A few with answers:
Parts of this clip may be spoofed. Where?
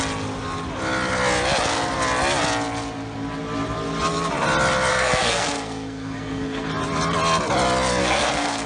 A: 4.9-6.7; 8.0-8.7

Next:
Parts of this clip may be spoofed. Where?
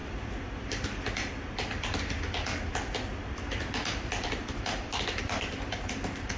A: none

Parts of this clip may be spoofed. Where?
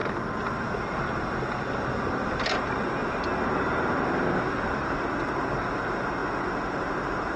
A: none